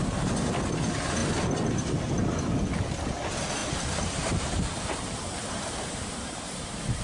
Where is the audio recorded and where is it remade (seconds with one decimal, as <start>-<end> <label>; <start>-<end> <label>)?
0.0-3.6 recorded; 3.6-7.0 remade